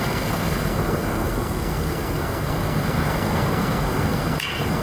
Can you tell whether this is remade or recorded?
remade